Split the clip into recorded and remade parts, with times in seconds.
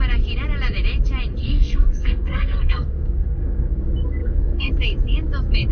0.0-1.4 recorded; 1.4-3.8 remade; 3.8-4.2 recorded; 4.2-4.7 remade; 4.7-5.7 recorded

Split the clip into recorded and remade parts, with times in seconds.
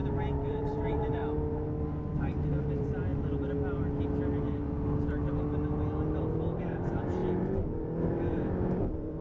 0.0-0.5 recorded; 0.5-1.2 remade; 1.2-2.6 recorded; 2.6-3.1 remade; 3.1-6.3 recorded; 6.3-9.2 remade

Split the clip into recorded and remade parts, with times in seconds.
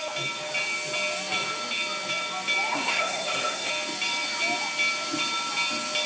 0.0-2.7 recorded; 2.7-3.7 remade; 3.7-6.1 recorded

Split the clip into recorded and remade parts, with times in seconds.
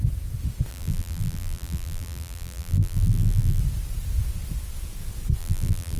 0.0-0.7 recorded; 0.7-3.6 remade; 3.6-5.4 recorded; 5.4-6.0 remade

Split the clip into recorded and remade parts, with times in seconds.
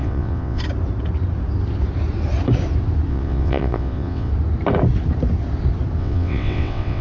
0.0-0.6 remade; 0.6-3.1 recorded; 3.1-4.3 remade; 4.3-6.0 recorded; 6.0-7.0 remade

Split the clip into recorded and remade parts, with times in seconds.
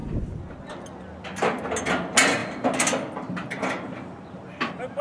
0.0-5.0 recorded